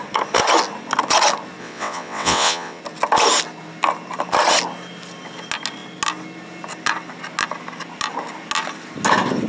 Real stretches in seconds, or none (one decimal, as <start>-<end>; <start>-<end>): 0.0-1.6; 2.8-9.5